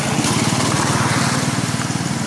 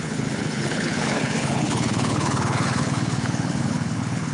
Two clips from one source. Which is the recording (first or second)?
first